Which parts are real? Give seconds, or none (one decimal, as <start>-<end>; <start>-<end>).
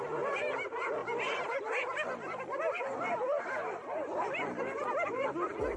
0.0-5.8